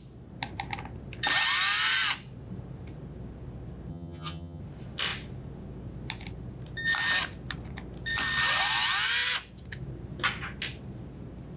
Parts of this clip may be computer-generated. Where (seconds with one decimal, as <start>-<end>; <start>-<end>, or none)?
3.9-4.6